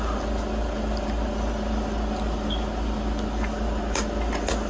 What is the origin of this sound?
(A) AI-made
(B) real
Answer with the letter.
B